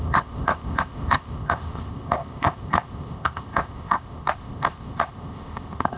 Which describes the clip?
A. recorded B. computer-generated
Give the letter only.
B